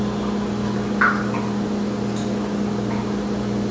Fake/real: real